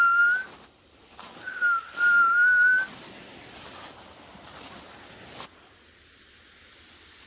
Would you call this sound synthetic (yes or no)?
no